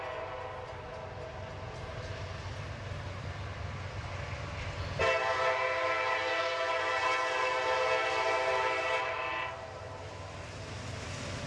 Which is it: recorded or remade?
recorded